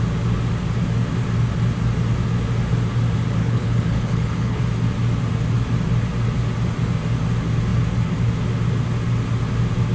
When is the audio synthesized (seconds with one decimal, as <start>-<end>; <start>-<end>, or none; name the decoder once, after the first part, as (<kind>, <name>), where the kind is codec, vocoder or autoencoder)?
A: 3.4-4.6 (codec, HILCodec)